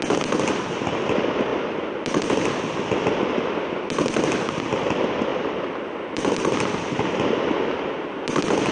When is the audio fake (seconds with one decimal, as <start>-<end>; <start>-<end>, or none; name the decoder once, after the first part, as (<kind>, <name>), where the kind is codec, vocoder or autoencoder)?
5.3-6.8 (vocoder, BigVGAN v2)

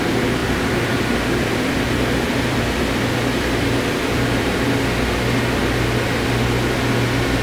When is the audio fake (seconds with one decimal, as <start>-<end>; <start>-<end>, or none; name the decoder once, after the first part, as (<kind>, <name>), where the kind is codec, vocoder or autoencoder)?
0.4-4.8 (vocoder, BigVGAN v2)